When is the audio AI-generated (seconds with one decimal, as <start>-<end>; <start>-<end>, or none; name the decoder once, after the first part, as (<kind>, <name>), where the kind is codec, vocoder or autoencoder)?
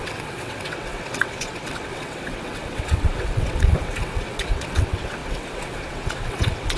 0.0-6.8 (vocoder, WaveNeXt)